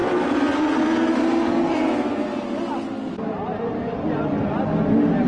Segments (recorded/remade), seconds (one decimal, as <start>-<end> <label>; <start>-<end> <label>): 0.0-5.3 recorded

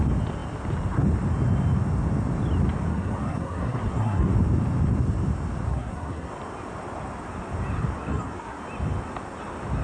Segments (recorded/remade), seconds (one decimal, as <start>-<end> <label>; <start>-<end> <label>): 0.0-2.9 recorded; 2.9-4.3 remade; 4.3-5.7 recorded; 5.7-6.3 remade; 6.3-8.0 recorded; 8.0-8.6 remade; 8.6-9.8 recorded